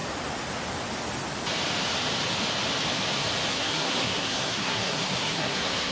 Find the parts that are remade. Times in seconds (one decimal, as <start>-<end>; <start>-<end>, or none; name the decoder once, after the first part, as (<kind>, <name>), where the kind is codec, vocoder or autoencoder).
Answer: 3.5-5.9 (codec, SNAC)